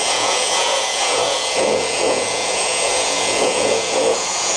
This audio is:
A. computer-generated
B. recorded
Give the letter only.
A